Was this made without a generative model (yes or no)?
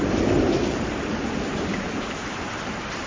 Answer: no